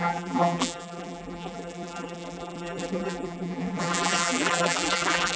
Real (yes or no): no